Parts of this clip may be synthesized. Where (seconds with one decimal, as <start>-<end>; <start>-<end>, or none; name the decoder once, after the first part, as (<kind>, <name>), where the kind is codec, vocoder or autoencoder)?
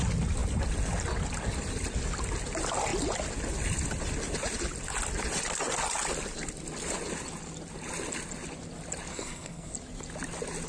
9.1-9.7 (codec, SNAC)